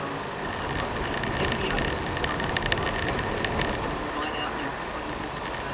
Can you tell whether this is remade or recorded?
recorded